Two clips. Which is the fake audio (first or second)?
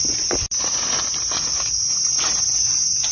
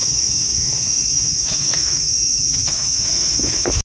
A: second